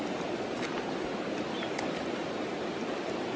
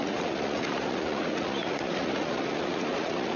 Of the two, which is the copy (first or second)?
second